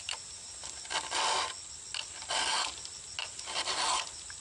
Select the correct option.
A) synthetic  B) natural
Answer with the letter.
B